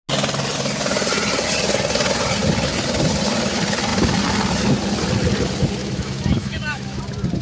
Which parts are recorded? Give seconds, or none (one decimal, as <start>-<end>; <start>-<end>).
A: 0.0-5.8; 7.0-7.4